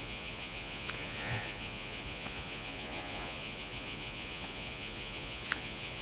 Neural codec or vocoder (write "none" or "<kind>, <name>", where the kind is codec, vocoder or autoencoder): vocoder, Vocos